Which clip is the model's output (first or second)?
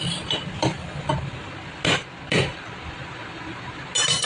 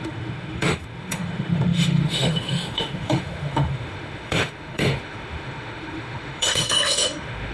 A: second